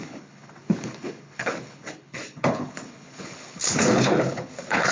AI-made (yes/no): yes